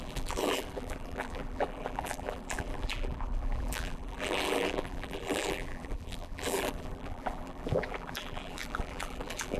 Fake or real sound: fake